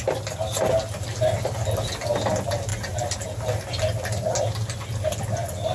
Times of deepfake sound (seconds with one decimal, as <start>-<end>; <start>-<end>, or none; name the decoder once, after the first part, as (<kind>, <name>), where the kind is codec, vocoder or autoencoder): none